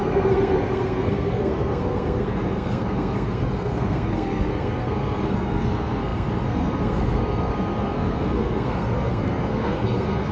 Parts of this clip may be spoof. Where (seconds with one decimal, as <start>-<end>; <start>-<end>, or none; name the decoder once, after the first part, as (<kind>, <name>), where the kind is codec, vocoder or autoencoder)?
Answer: 0.0-10.3 (codec, SNAC)